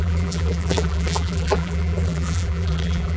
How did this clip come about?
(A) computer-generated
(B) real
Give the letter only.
A